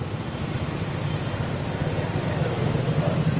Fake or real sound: real